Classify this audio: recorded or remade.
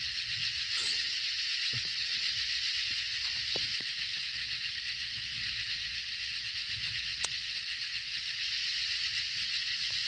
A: remade